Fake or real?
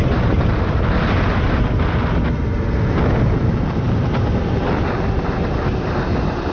real